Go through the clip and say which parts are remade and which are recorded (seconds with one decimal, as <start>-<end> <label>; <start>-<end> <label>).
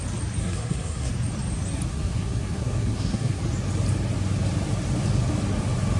0.0-0.4 recorded; 0.4-1.1 remade; 1.1-1.9 recorded; 1.9-3.4 remade; 3.4-6.0 recorded